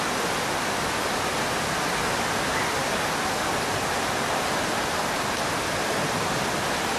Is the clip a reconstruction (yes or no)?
no